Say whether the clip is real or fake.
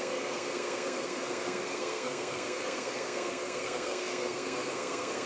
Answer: fake